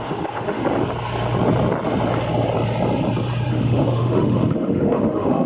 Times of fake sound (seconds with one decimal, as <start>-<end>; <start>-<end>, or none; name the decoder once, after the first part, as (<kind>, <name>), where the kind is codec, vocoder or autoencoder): 0.0-0.6 (autoencoder, DAC-VAE); 3.5-5.5